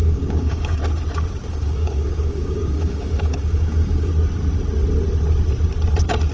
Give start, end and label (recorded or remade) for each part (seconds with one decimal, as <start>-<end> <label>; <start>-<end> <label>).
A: 0.0-0.8 remade; 0.8-1.5 recorded; 1.5-4.1 remade; 4.1-6.3 recorded